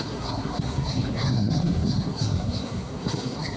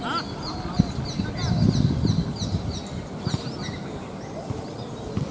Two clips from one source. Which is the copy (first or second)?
first